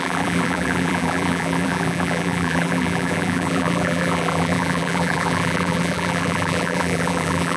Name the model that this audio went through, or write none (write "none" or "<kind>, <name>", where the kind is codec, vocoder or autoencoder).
vocoder, BigVGAN v2